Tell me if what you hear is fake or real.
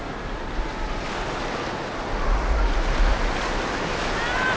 real